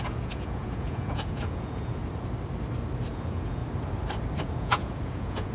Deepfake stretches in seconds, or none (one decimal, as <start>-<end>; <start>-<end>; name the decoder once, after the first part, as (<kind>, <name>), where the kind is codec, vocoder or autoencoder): 0.0-2.0 (vocoder, Vocos); 3.1-3.6; 4.4-5.5